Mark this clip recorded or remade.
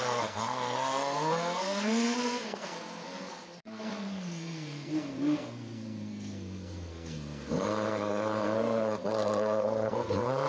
remade